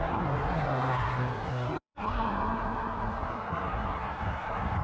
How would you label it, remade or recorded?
remade